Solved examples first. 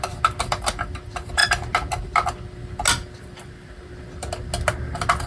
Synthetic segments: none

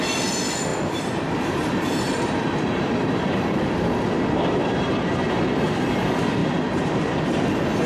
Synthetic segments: 0.7-3.6 (vocoder, BigVGAN v2); 4.6-5.6; 6.4-7.4

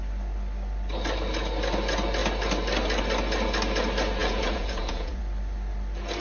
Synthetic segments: 4.2-5.2 (vocoder, Vocos)

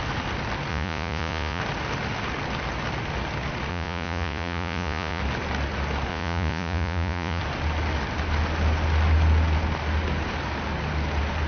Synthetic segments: 0.7-1.6 (vocoder, Vocos); 3.7-5.2; 6.1-7.4

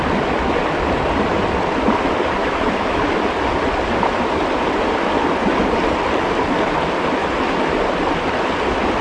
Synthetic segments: 2.4-3.0 (autoencoder, DAC-VAE)

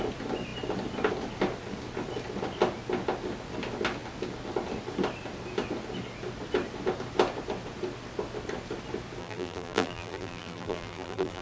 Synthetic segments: 9.2-11.4 (vocoder, BigVGAN v2)

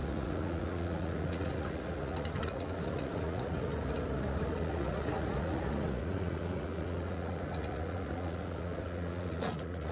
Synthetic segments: 0.0-9.9 (vocoder, Vocos)